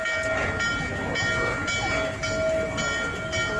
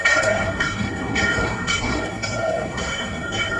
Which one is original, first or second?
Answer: first